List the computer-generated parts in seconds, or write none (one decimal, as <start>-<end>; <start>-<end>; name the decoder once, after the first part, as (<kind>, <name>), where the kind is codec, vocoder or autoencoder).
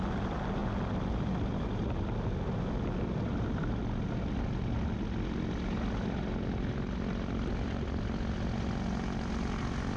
none